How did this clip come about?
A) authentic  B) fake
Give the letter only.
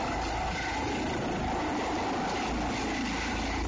A